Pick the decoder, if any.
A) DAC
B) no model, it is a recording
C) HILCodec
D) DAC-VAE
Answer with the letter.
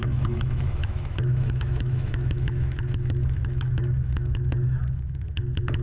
D